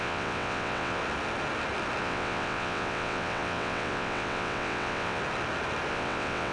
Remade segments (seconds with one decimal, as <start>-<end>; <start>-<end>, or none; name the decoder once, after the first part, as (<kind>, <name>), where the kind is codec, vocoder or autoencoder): 0.0-1.0 (vocoder, WaveNeXt); 2.0-5.2; 5.9-6.5